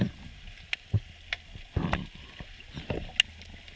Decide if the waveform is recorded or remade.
recorded